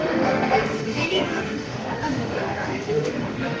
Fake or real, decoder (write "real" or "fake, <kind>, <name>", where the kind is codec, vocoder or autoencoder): fake, autoencoder, DAC-VAE